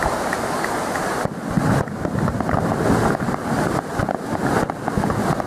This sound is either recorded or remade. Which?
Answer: recorded